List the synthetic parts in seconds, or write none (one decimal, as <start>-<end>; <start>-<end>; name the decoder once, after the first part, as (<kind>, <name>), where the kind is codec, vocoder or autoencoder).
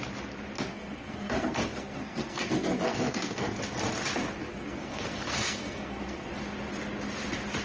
0.7-3.6 (codec, SNAC); 4.5-6.3